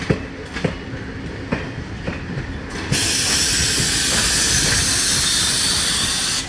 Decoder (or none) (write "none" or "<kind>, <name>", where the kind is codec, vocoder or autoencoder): none